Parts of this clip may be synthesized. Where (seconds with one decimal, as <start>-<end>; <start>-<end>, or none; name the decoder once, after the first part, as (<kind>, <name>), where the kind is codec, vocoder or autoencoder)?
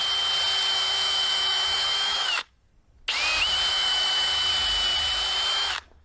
0.7-2.7 (autoencoder, DAC-VAE); 3.7-4.5; 5.5-6.0